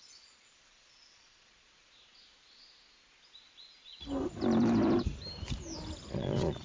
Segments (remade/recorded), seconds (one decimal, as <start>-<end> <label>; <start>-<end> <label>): 0.0-2.1 remade; 2.1-6.1 recorded; 6.1-6.6 remade